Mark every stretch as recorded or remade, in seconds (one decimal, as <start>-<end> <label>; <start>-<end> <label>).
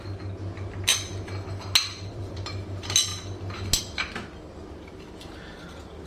0.0-0.9 remade; 0.9-2.1 recorded; 2.1-3.1 remade; 3.1-3.8 recorded; 3.8-6.1 remade